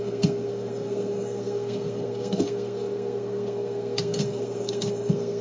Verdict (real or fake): fake